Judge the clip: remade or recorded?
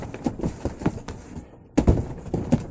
recorded